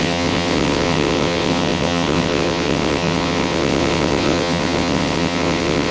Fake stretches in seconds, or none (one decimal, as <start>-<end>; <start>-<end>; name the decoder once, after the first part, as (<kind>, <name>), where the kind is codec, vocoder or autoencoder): 0.0-5.9 (vocoder, WaveNeXt)